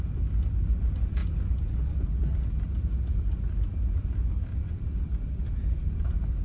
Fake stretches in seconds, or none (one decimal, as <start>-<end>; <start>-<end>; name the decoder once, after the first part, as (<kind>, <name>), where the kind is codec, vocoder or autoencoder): none